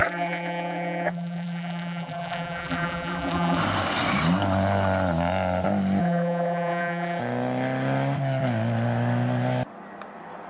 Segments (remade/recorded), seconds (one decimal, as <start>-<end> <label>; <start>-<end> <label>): 0.0-3.6 remade; 3.6-6.0 recorded; 6.0-7.2 remade; 7.2-10.5 recorded